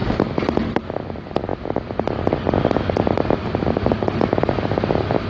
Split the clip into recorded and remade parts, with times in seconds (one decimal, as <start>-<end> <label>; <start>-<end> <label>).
0.0-5.3 recorded